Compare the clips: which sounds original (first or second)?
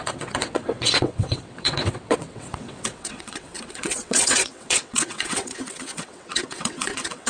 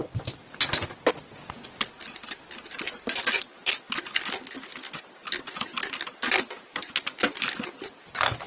second